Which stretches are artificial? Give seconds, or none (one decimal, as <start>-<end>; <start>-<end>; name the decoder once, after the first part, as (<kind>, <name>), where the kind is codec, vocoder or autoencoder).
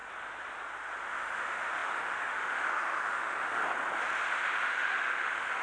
1.0-3.6 (autoencoder, DAC-VAE); 4.3-5.6